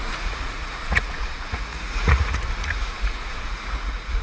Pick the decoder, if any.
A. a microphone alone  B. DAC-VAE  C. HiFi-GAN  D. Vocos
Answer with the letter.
D